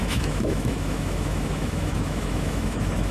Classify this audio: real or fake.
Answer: fake